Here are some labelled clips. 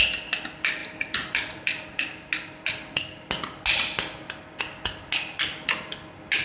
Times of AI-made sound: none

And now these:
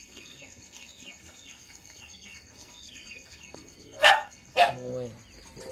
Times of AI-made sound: 0.0-4.9 (codec, SNAC)

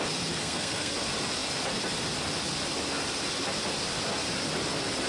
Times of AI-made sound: 0.4-0.9 (codec, SNAC)

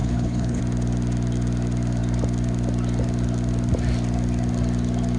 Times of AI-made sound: 0.0-0.6 (codec, HILCodec)

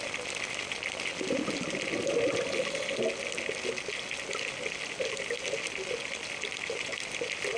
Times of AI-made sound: none

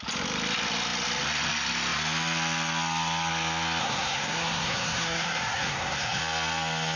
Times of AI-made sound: 3.8-6.2 (codec, SNAC)

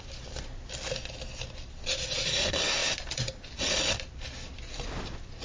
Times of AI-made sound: none